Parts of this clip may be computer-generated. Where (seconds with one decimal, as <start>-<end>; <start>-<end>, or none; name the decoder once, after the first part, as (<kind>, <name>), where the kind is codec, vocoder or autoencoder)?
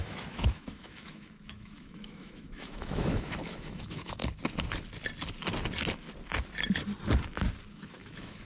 0.0-4.2 (autoencoder, DAC-VAE); 7.7-8.4